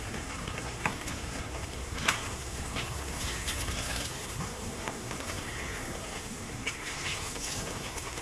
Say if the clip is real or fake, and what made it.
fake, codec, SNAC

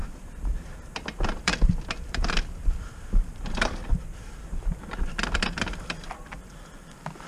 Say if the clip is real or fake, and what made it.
fake, vocoder, BigVGAN v2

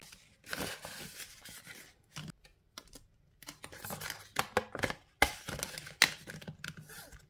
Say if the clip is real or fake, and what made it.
real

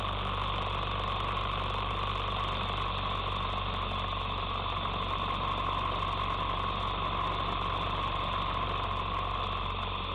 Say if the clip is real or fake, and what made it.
real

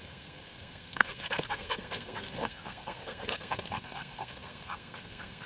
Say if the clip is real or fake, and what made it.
fake, codec, SNAC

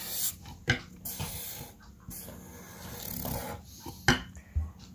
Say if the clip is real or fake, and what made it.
real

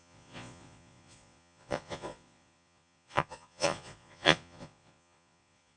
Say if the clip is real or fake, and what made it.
fake, vocoder, Vocos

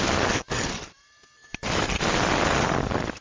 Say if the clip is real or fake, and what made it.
real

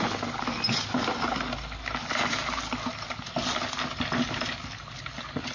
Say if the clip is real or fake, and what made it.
real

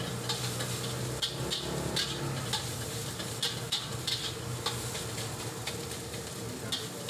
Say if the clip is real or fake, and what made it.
real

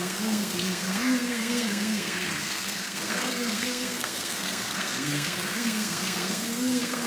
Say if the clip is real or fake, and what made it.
fake, codec, SNAC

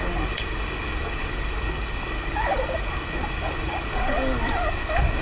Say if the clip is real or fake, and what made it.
fake, codec, DAC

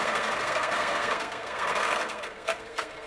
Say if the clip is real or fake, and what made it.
fake, codec, SNAC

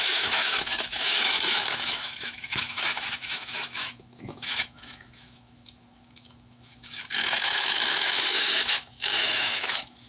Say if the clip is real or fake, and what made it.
fake, autoencoder, DAC-VAE